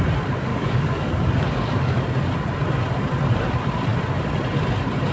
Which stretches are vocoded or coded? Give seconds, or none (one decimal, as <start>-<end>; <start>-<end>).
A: 0.5-2.0